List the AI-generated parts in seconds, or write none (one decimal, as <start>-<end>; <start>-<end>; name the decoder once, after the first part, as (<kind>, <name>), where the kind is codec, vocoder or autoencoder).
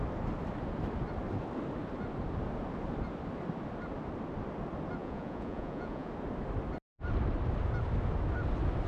5.0-6.1 (vocoder, Vocos)